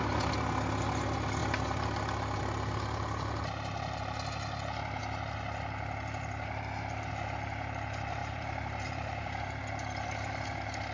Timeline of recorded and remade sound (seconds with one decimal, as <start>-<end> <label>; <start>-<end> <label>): 0.0-8.2 recorded; 8.2-9.6 remade; 9.6-10.9 recorded